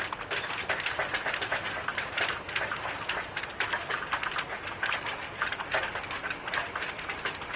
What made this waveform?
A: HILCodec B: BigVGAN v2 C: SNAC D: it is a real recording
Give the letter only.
D